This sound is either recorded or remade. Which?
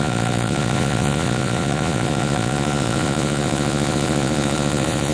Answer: remade